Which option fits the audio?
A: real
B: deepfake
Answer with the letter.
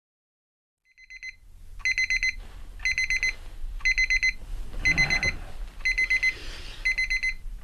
A